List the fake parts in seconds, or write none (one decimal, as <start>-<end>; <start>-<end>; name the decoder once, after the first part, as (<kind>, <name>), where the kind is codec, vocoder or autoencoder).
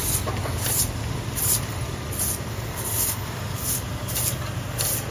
0.4-1.0 (vocoder, BigVGAN v2)